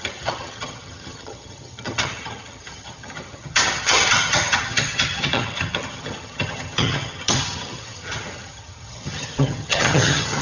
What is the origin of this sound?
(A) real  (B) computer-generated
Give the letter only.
B